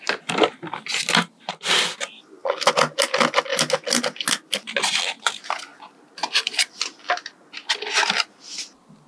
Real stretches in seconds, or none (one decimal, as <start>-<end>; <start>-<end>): 0.0-9.1